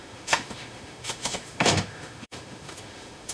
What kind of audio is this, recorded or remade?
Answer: remade